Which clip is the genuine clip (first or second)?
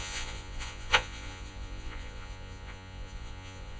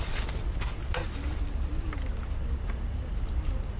second